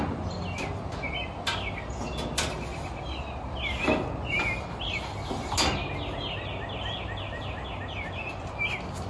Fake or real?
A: real